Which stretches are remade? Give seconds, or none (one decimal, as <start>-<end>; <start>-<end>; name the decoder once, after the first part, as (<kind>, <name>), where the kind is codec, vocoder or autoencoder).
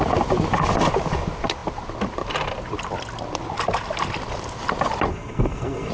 5.1-5.9 (codec, SNAC)